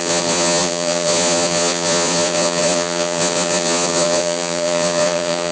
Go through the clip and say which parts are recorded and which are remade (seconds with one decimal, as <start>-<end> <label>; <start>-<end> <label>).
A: 0.0-5.5 remade